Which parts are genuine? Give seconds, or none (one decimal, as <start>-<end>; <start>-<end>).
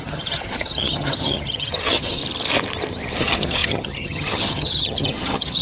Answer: 2.2-3.2